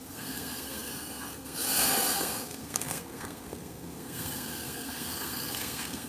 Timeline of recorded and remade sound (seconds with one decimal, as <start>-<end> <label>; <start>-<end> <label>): 0.0-6.1 remade